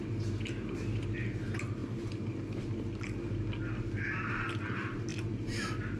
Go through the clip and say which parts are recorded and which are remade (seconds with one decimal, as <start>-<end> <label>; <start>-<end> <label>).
0.0-6.0 recorded